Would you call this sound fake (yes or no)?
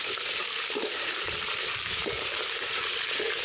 yes